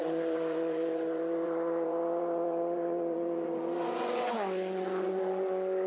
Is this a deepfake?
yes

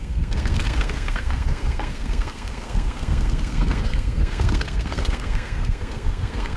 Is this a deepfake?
yes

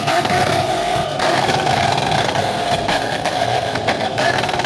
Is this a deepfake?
yes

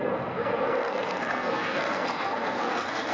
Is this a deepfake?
yes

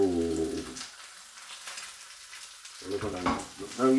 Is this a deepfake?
no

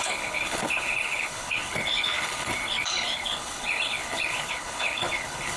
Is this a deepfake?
yes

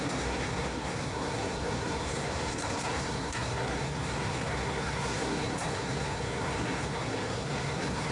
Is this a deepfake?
yes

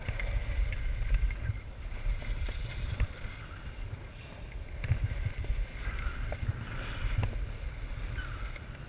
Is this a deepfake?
no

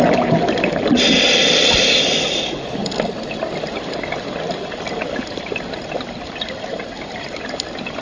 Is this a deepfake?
no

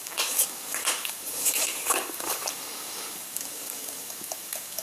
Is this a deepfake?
yes